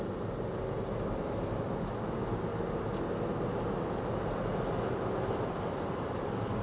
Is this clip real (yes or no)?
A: yes